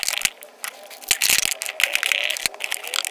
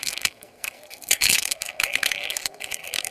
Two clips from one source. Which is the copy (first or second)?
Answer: second